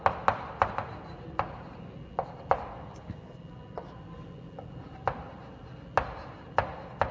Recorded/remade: recorded